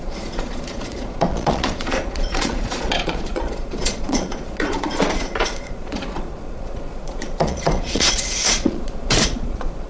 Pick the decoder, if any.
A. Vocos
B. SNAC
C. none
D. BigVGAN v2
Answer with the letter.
A